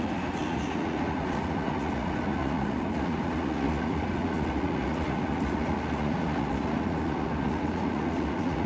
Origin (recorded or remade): remade